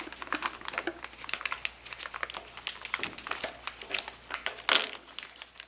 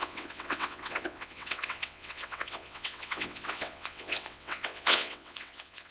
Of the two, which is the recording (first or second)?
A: first